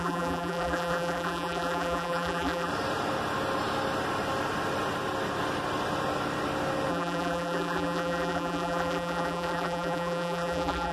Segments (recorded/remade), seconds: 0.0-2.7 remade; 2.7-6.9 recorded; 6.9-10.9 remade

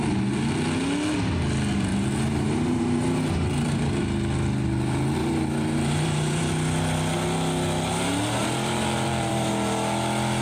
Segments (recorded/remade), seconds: 0.0-1.9 recorded; 1.9-4.0 remade; 4.0-5.2 recorded; 5.2-6.5 remade; 6.5-8.4 recorded; 8.4-9.5 remade; 9.5-10.4 recorded

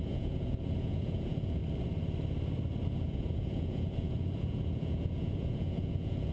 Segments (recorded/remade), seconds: 0.0-1.6 remade; 1.6-2.9 recorded; 2.9-6.3 remade

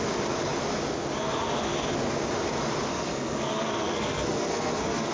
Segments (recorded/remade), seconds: 0.0-2.9 recorded; 2.9-5.1 remade

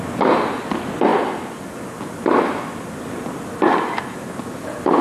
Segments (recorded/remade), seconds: 0.0-5.0 recorded

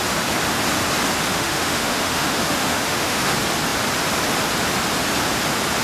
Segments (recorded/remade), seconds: 0.0-1.3 recorded; 1.3-3.2 remade; 3.2-5.8 recorded